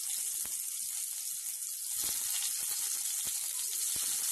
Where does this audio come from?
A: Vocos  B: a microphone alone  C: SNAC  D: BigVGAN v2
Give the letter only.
B